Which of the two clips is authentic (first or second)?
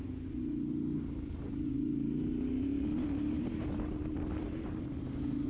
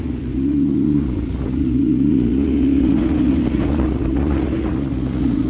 first